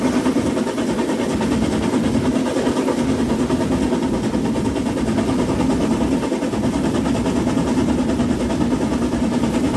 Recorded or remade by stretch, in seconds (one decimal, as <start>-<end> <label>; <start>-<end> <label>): 0.0-9.8 recorded

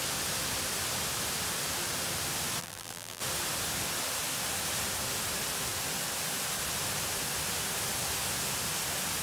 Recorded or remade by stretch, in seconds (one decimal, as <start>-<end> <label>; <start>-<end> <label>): 0.0-2.6 recorded; 2.6-3.2 remade; 3.2-9.2 recorded

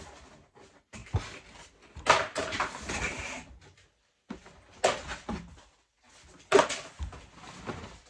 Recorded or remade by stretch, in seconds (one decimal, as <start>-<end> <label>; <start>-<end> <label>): 0.0-8.1 recorded